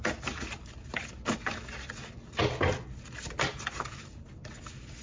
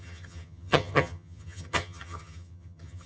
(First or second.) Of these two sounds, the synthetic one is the second